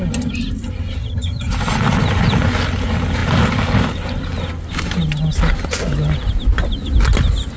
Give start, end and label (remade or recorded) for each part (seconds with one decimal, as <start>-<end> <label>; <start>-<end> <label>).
0.0-1.0 recorded; 1.0-1.5 remade; 1.5-7.6 recorded